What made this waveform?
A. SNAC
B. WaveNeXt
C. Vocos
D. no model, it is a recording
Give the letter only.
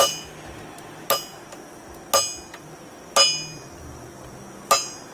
D